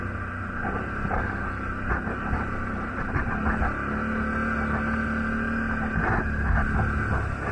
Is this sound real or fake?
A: real